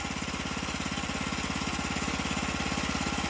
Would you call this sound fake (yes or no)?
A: no